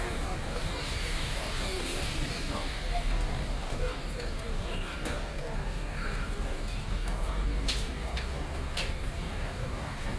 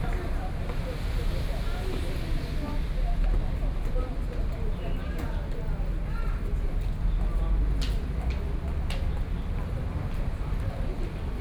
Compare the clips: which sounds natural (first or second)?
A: second